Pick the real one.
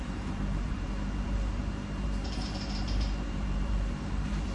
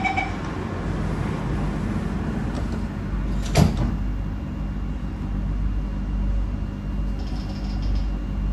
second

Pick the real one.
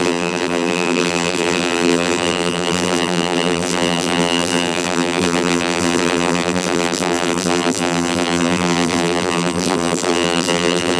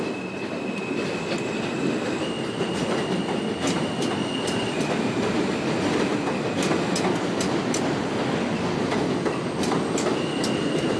second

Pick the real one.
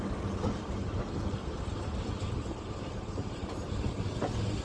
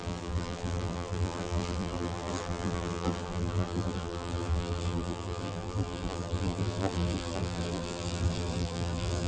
first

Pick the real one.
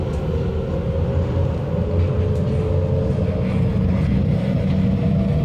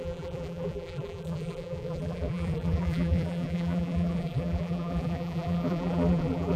first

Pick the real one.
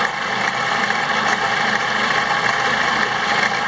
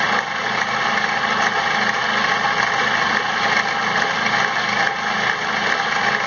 second